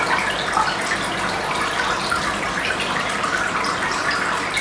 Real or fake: real